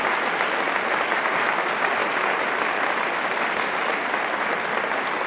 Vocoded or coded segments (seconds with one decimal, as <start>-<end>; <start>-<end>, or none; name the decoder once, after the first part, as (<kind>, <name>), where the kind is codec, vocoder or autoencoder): none